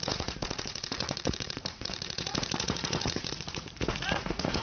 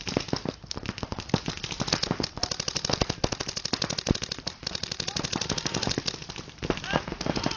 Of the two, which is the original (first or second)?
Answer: second